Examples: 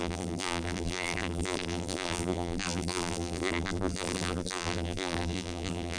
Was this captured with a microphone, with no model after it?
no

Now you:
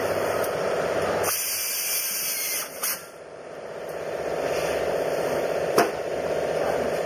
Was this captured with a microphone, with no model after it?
no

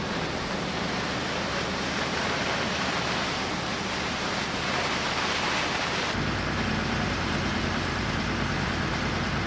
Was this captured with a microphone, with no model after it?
no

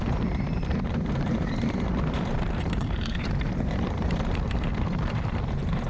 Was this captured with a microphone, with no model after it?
no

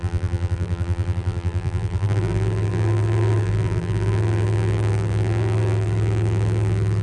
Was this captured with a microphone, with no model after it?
no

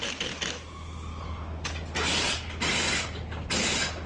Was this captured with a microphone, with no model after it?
yes